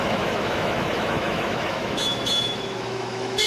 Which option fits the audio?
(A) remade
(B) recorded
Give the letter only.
A